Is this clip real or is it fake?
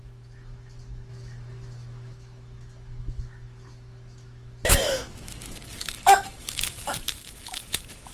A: fake